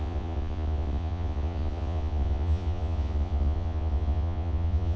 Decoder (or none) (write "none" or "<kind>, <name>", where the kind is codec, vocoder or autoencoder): vocoder, Vocos